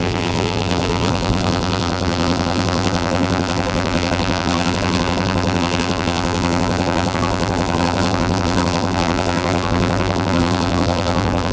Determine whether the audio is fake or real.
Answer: fake